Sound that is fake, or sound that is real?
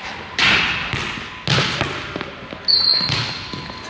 real